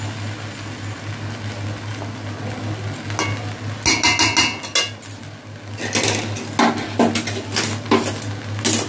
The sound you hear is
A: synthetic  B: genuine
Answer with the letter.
B